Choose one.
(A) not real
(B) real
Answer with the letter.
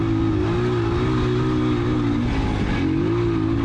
B